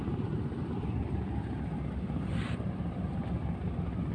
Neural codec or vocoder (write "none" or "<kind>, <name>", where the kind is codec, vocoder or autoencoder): none